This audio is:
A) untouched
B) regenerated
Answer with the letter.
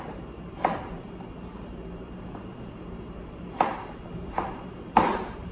B